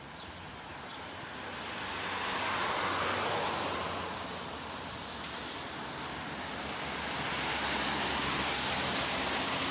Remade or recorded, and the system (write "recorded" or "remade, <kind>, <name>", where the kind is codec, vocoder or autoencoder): remade, vocoder, BigVGAN v2